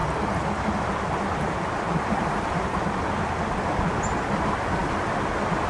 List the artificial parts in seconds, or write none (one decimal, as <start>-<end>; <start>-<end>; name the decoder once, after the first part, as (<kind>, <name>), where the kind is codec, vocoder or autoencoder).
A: none